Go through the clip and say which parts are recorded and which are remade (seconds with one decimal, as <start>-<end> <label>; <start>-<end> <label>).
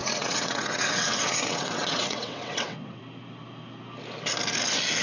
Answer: 0.0-3.0 remade; 3.0-5.0 recorded